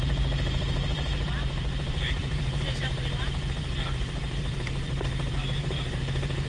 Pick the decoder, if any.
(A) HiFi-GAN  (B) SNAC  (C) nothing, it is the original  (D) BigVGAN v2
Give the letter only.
D